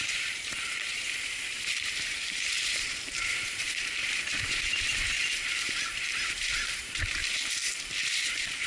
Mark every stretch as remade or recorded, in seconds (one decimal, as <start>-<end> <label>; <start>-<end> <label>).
0.0-7.2 remade; 7.2-8.0 recorded; 8.0-8.7 remade